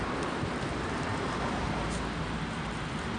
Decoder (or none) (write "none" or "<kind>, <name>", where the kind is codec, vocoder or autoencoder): none